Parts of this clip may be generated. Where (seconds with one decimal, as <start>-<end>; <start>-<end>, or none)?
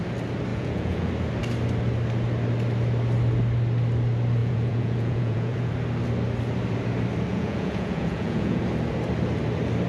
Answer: 0.5-1.1; 4.4-5.7; 7.3-8.6